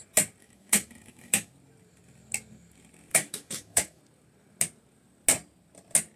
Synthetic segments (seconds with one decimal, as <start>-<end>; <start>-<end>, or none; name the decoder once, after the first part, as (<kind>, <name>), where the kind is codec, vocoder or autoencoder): 0.4-1.5 (autoencoder, DAC-VAE); 3.1-4.0